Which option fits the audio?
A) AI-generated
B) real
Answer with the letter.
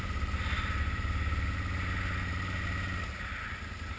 B